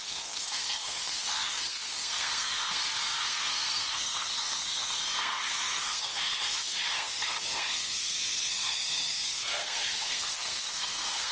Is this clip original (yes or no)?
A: no